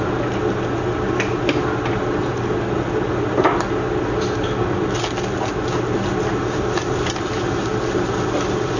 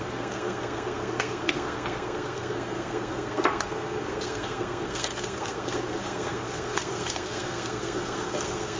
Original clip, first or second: first